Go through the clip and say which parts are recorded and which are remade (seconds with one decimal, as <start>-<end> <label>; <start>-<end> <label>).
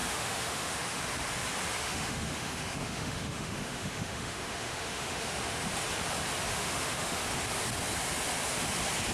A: 0.0-1.0 remade; 1.0-1.8 recorded; 1.8-5.7 remade; 5.7-6.5 recorded; 6.5-7.2 remade; 7.2-9.1 recorded